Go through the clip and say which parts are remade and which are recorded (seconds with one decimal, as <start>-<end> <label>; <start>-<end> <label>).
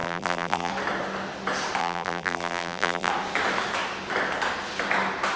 0.0-0.7 remade; 0.7-1.8 recorded; 1.8-3.1 remade; 3.1-5.4 recorded